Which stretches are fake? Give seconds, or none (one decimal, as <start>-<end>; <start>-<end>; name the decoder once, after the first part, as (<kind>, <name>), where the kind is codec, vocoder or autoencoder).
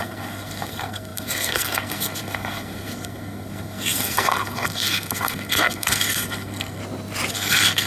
0.0-6.8 (codec, SNAC); 7.3-7.9